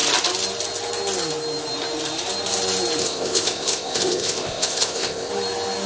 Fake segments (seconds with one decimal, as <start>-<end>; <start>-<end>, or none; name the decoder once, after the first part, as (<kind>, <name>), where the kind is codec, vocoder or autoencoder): 3.0-5.3 (codec, ZipCodec)